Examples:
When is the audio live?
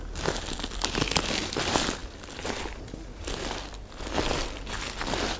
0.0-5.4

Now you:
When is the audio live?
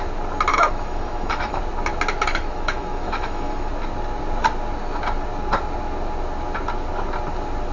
0.0-0.5; 1.6-2.3; 3.7-7.7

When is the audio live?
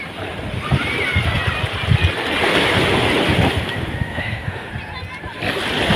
0.0-4.1; 4.7-6.0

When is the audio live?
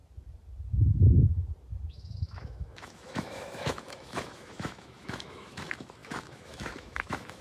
0.0-1.9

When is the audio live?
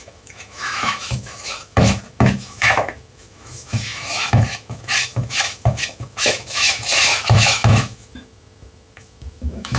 none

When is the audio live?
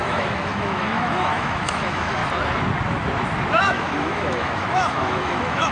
2.2-3.6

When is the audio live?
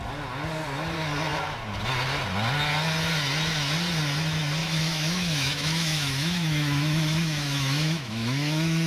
0.0-4.6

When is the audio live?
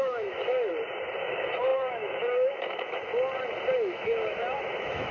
0.7-1.2; 3.1-3.7